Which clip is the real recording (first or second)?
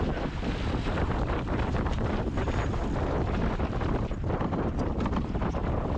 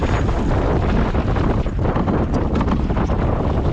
second